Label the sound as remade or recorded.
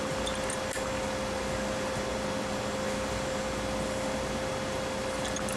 recorded